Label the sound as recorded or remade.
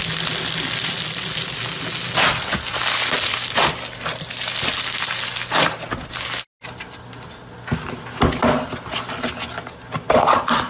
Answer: recorded